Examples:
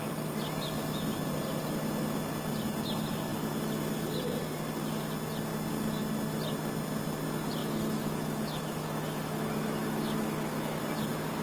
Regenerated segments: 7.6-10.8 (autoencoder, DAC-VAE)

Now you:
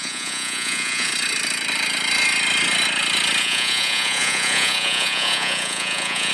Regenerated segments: 0.0-1.1 (vocoder, Vocos); 3.4-6.3

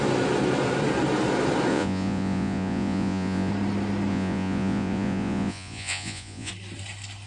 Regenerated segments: 1.7-3.5 (vocoder, Vocos); 4.1-6.5

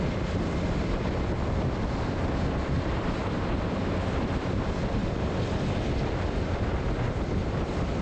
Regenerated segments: 0.0-5.0 (vocoder, BigVGAN v2); 6.6-8.0